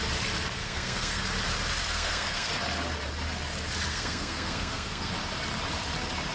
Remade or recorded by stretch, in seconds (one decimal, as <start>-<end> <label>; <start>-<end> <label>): 0.0-0.6 recorded; 0.6-1.2 remade; 1.2-1.8 recorded; 1.8-2.5 remade; 2.5-3.9 recorded; 3.9-5.1 remade; 5.1-6.3 recorded

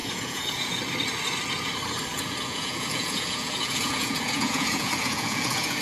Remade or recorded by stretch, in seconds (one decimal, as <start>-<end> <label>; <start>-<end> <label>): 0.0-0.8 remade; 0.8-2.1 recorded; 2.1-5.8 remade

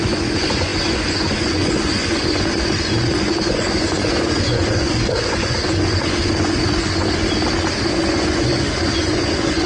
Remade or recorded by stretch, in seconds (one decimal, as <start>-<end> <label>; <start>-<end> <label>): 0.0-7.2 remade; 7.2-7.9 recorded; 7.9-9.7 remade

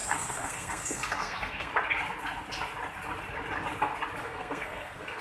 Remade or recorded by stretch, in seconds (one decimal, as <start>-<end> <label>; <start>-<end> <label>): 0.0-1.7 remade; 1.7-4.2 recorded; 4.2-5.2 remade

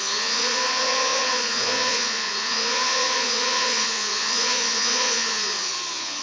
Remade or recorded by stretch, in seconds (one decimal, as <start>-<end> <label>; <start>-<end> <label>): 0.0-6.2 remade